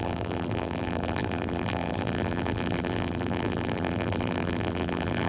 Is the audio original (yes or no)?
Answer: no